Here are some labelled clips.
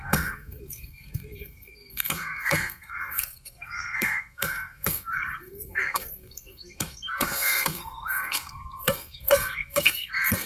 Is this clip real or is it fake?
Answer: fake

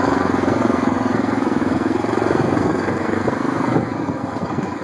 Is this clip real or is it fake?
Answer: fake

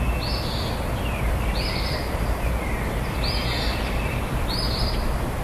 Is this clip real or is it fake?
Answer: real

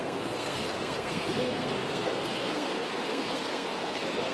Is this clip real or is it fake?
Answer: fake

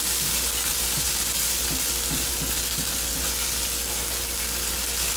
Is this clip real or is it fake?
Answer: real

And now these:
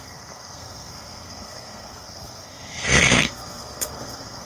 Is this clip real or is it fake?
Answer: fake